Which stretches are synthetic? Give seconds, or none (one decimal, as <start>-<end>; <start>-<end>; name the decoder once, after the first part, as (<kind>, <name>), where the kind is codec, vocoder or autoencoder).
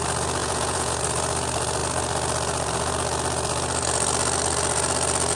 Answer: 0.4-0.9 (vocoder, Vocos)